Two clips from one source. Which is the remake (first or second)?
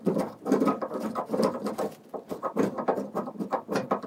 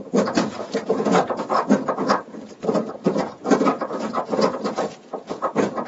second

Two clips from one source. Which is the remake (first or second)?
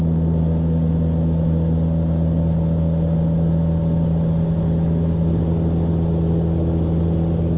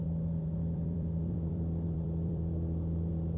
second